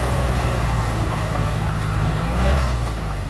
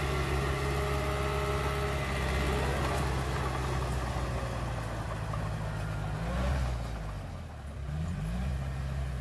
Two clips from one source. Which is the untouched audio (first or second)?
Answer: second